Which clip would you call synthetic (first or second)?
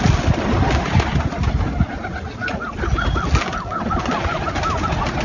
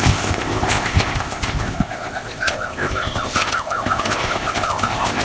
second